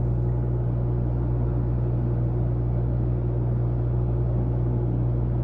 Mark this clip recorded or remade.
recorded